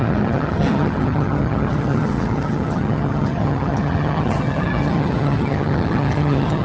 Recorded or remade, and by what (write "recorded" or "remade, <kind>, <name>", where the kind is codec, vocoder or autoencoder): remade, vocoder, HiFi-GAN